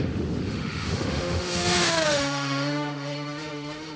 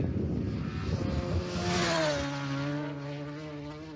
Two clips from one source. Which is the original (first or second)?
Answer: second